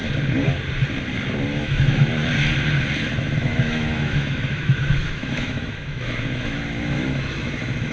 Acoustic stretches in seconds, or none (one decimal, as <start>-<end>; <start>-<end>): 0.0-1.6; 2.1-3.0